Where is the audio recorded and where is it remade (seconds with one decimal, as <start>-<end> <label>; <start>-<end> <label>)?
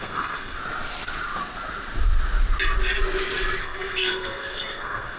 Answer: 0.0-0.6 remade; 0.6-3.6 recorded; 3.6-5.2 remade